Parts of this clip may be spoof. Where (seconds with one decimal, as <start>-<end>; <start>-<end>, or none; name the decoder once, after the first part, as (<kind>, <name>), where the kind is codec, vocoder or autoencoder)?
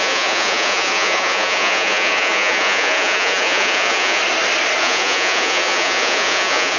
0.0-4.2 (vocoder, Vocos); 4.8-6.8